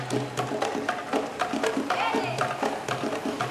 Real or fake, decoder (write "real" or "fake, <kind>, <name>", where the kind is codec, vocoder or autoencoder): real